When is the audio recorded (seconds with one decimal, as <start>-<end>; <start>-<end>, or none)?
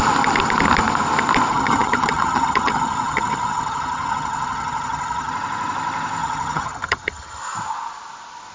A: 0.0-1.5; 5.3-6.2; 7.4-8.5